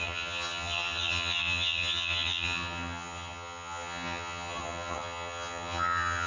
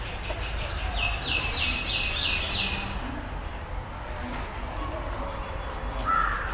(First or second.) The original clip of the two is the second